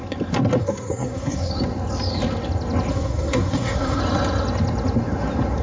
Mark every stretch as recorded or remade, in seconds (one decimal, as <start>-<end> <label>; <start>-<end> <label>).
0.0-0.6 recorded; 0.6-1.5 remade; 1.5-2.9 recorded; 2.9-4.0 remade; 4.0-5.6 recorded